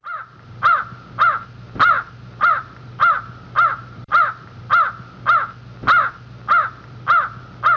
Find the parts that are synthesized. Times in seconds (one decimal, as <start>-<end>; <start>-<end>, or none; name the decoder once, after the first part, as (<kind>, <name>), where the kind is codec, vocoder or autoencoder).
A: 0.0-4.7 (vocoder, BigVGAN v2)